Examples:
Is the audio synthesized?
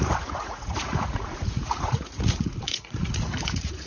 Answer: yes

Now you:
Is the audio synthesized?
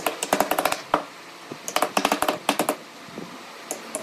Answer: no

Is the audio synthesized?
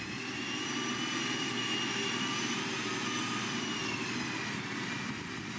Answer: no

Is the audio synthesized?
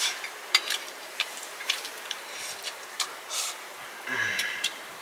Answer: yes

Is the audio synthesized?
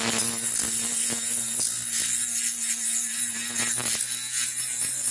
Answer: no